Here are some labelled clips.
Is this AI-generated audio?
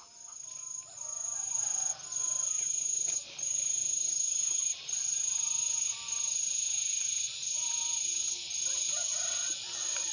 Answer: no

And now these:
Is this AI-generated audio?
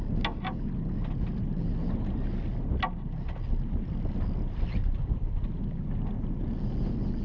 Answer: no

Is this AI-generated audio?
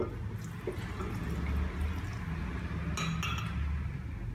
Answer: no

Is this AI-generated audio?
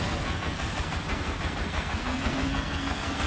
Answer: yes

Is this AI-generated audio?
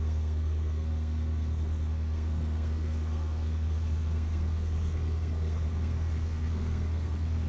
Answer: yes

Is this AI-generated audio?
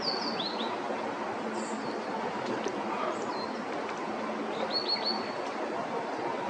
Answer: no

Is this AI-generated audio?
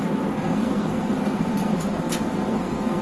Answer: yes